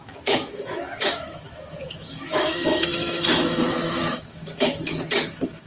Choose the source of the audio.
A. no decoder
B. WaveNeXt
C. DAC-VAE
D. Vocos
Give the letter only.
C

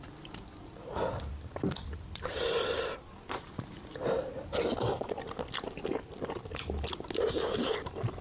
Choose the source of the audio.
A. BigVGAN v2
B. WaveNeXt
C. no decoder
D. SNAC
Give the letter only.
C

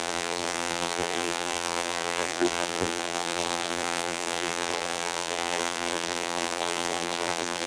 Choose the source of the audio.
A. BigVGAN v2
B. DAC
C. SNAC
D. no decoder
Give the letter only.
A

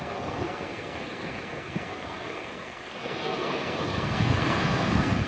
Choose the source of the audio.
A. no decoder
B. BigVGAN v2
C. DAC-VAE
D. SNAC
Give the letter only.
D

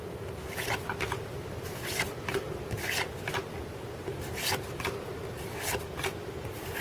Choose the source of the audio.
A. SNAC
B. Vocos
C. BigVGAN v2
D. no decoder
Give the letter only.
D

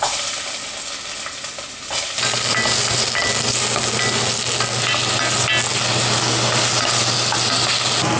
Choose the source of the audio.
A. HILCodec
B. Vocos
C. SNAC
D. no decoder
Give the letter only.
D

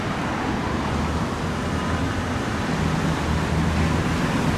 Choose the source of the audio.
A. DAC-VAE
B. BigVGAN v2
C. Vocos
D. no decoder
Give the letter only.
D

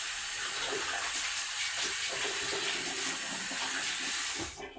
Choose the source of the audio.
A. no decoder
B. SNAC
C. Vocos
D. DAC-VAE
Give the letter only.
A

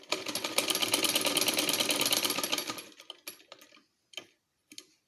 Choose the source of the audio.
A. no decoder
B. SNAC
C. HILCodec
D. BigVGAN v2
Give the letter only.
A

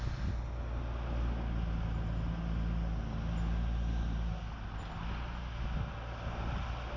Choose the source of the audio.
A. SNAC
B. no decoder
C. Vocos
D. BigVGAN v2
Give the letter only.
B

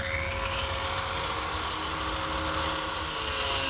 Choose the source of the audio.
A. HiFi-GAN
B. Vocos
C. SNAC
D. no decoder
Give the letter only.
D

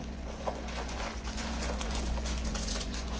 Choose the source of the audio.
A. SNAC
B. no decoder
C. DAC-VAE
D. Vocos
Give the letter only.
D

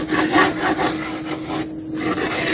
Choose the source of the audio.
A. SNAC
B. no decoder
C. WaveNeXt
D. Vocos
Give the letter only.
B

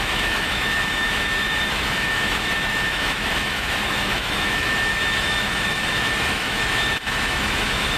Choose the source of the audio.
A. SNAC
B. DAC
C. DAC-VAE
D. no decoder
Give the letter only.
C